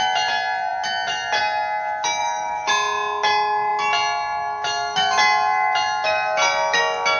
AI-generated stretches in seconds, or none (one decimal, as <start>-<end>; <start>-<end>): 2.2-2.7

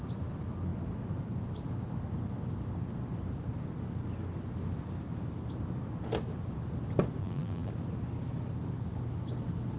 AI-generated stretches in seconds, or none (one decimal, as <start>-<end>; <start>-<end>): 7.2-7.7

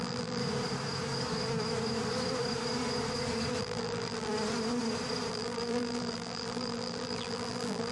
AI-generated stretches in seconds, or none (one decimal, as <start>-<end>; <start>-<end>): 0.0-0.4; 3.6-4.3; 5.3-7.9

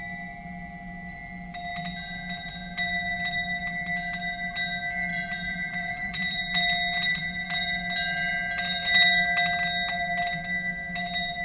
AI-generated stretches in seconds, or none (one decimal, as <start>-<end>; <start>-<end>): 5.1-6.4